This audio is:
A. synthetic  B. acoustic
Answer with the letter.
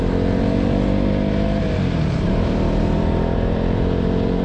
B